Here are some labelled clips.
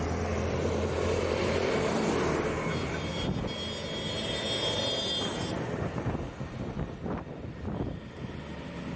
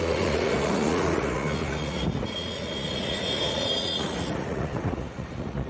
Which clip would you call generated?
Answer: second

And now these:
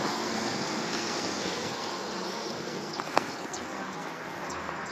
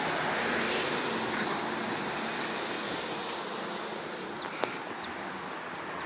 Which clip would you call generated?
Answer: first